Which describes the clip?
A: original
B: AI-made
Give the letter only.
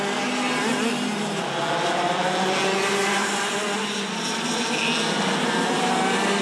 A